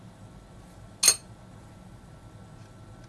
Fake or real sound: real